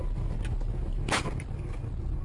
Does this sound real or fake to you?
real